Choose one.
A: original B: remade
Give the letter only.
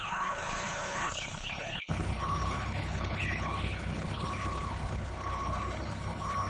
B